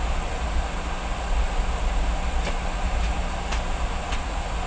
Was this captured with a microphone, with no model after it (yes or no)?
yes